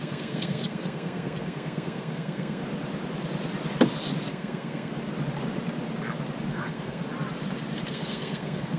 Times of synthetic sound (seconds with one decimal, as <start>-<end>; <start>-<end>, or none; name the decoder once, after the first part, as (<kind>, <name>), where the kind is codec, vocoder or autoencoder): 0.0-2.6 (codec, SNAC); 4.3-4.9; 6.5-7.0; 7.9-8.8